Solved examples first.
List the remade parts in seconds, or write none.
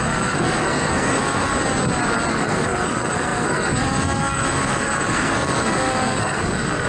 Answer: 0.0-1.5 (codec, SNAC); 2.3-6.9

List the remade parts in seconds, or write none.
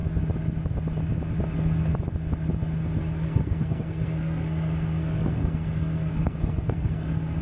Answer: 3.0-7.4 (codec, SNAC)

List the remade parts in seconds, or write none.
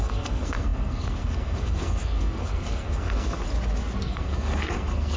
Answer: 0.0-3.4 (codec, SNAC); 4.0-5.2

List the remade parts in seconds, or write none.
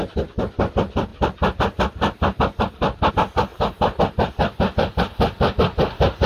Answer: none